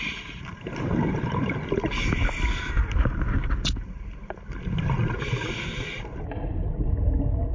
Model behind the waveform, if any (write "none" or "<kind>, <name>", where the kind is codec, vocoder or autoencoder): none